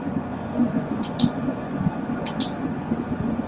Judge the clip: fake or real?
fake